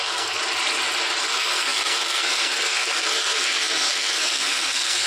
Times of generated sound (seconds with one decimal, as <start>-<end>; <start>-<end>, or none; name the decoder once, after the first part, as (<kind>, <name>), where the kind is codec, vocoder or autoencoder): 0.0-0.4 (codec, SNAC); 1.2-5.1